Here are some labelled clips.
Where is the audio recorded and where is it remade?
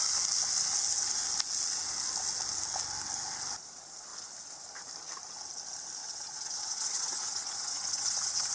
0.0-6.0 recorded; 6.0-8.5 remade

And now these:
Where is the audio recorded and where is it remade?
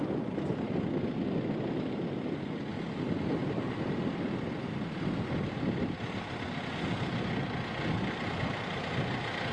0.0-9.5 recorded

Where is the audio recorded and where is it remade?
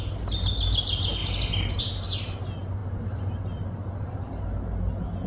0.0-5.3 recorded